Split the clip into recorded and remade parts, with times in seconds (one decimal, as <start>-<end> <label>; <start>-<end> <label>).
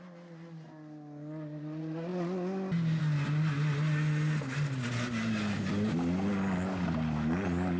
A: 0.0-7.8 recorded